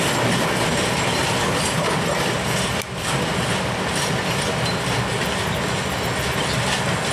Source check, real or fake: real